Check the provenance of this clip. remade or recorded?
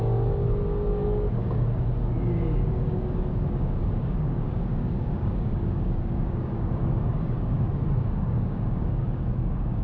remade